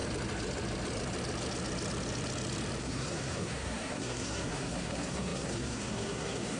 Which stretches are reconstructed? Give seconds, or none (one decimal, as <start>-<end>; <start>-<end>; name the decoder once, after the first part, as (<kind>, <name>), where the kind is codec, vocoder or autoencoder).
2.8-6.6 (codec, SNAC)